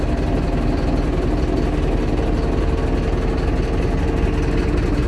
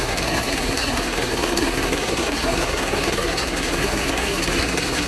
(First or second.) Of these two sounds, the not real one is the second